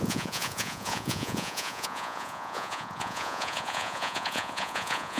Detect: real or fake fake